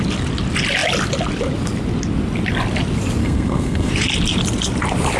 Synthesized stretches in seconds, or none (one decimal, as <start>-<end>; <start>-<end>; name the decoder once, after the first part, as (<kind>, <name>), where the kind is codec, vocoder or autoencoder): 3.2-3.9 (codec, SNAC)